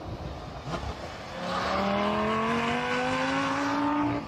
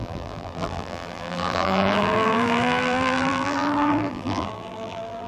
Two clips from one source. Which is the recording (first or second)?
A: first